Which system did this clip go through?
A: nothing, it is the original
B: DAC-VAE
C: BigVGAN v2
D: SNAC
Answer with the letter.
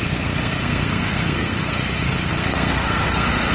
D